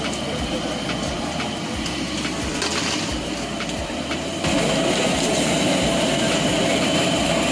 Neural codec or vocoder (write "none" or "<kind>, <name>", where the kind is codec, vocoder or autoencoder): none